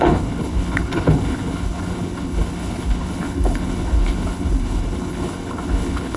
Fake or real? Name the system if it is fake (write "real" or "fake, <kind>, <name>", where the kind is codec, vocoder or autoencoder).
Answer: fake, codec, HILCodec